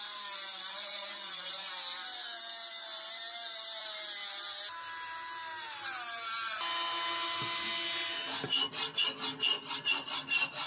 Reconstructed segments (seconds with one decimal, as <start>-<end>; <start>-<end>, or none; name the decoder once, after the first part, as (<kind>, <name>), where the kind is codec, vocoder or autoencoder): 0.7-1.7 (vocoder, Vocos)